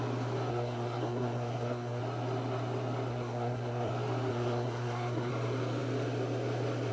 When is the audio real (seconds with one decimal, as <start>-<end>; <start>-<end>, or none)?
0.0-0.5; 2.0-3.1; 3.9-4.3; 5.3-6.9